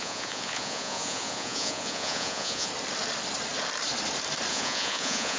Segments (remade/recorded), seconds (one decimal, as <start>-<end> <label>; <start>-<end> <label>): 0.0-2.7 remade; 2.7-4.5 recorded; 4.5-5.4 remade